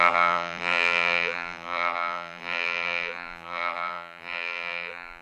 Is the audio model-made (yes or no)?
yes